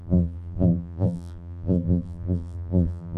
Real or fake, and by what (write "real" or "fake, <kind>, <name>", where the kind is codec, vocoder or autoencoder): fake, vocoder, BigVGAN v2